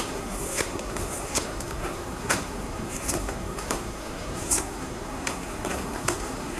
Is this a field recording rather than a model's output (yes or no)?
no